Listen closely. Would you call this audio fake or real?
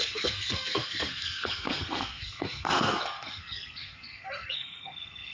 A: fake